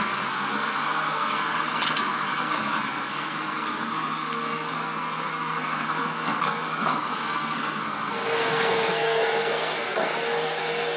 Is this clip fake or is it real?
fake